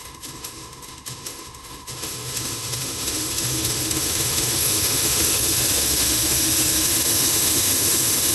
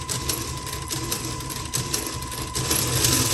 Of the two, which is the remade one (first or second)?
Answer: first